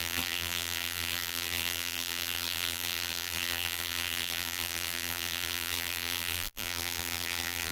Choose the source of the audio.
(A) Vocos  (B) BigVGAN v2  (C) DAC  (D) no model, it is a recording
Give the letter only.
B